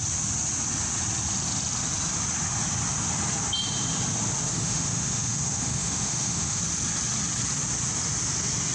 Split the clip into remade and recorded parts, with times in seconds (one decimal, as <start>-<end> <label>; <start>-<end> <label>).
0.0-4.5 recorded; 4.5-6.6 remade; 6.6-8.7 recorded